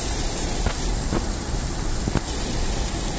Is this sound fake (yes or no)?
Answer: no